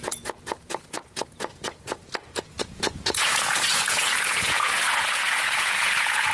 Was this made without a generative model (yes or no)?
no